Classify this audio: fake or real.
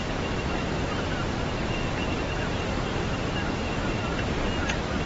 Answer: real